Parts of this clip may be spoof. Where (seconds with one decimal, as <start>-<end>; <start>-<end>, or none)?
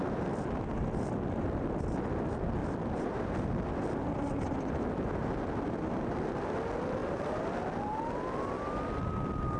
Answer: 2.6-3.3; 7.0-8.1